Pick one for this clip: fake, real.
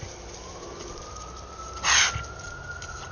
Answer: real